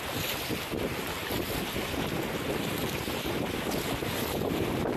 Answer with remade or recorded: recorded